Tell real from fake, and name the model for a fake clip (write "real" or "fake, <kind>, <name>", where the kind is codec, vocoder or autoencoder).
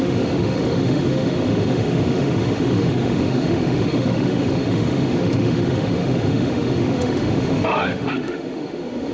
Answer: fake, autoencoder, DAC-VAE